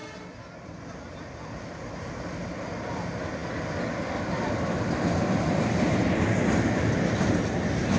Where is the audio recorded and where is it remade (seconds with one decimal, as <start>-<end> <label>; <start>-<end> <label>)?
0.0-8.0 recorded